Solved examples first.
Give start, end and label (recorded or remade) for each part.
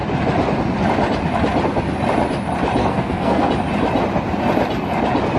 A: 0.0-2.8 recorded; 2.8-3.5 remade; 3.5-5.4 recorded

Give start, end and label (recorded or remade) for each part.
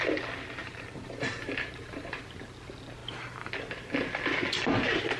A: 0.0-0.6 recorded; 0.6-2.2 remade; 2.2-3.0 recorded; 3.0-3.5 remade; 3.5-5.2 recorded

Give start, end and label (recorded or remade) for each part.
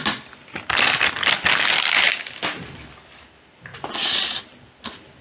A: 0.0-5.2 recorded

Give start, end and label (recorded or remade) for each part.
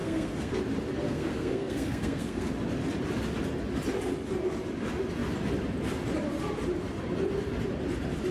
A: 0.0-0.6 remade; 0.6-1.0 recorded; 1.0-2.5 remade; 2.5-8.3 recorded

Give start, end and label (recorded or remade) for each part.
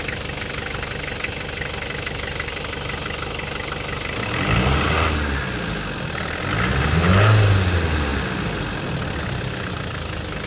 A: 0.0-10.5 recorded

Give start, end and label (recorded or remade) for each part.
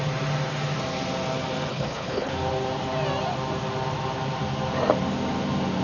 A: 0.0-1.7 recorded; 1.7-2.3 remade; 2.3-5.8 recorded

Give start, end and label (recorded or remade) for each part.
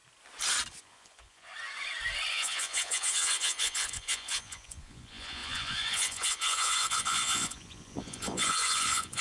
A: 0.0-0.8 recorded; 0.8-1.5 remade; 1.5-2.3 recorded; 2.3-9.2 remade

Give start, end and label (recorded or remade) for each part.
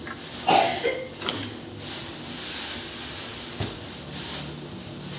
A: 0.0-2.0 recorded; 2.0-2.6 remade; 2.6-5.2 recorded